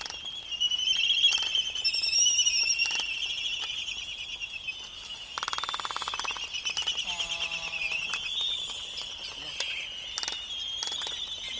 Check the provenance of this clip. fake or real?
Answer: real